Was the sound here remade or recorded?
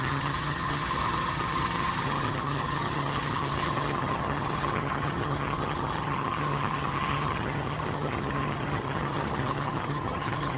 remade